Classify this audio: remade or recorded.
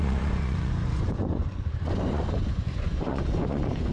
remade